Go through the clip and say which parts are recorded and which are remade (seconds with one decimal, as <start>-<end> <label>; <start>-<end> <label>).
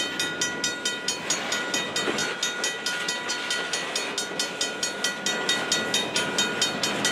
0.0-7.1 recorded